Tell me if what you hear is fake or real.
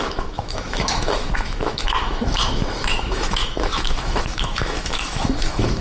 fake